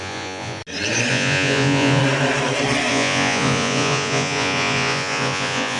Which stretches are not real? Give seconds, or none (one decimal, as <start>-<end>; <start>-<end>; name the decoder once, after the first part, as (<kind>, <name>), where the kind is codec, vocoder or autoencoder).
0.0-0.6 (vocoder, Vocos); 1.1-2.0; 2.9-5.8